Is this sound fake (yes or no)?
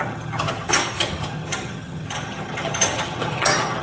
yes